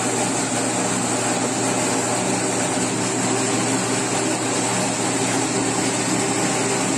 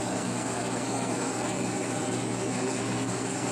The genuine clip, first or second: first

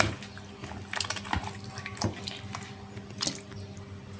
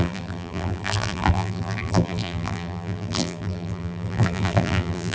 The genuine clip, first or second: first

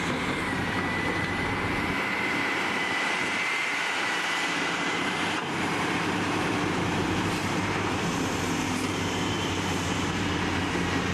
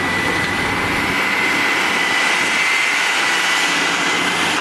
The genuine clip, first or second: second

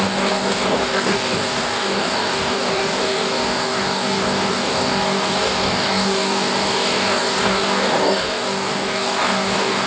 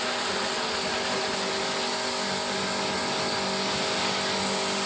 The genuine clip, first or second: second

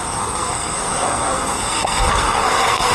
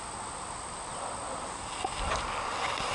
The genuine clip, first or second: second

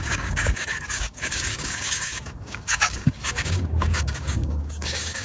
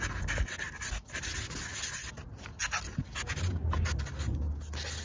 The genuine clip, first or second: second